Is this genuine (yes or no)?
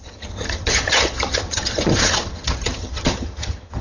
no